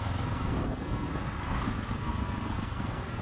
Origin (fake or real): fake